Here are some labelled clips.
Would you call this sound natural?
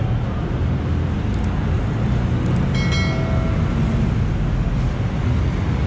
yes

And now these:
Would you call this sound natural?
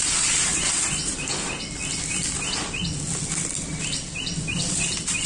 yes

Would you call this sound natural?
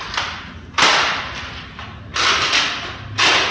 yes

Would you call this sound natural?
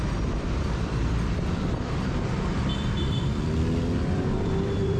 no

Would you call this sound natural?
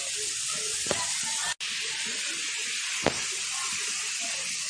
yes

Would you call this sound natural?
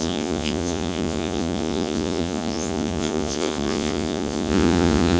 no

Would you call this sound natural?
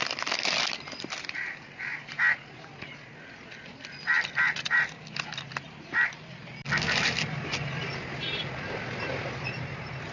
yes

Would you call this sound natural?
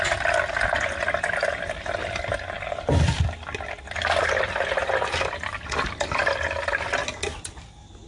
yes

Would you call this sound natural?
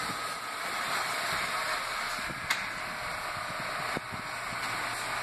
yes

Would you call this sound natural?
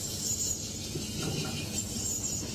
yes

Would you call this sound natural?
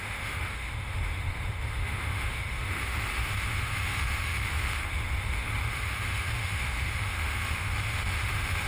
no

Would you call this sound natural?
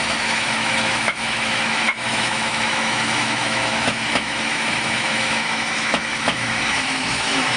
no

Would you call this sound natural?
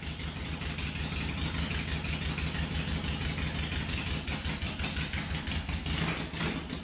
yes